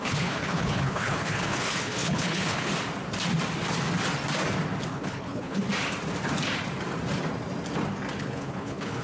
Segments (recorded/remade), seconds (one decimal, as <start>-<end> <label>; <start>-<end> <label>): 0.0-2.7 remade; 2.7-4.9 recorded; 4.9-5.6 remade; 5.6-8.2 recorded; 8.2-9.0 remade